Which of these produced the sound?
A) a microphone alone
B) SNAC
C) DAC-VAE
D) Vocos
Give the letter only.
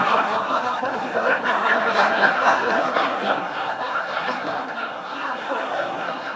B